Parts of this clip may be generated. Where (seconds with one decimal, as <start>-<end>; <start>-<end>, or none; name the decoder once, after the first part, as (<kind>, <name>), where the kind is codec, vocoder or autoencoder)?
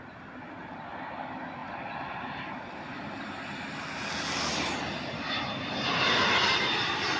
none